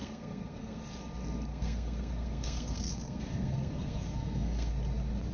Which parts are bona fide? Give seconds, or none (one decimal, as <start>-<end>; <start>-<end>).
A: 0.8-1.5; 4.7-5.3